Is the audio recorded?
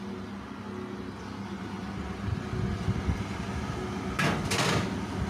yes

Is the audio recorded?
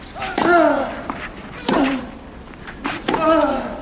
yes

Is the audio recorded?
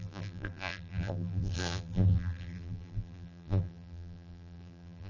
no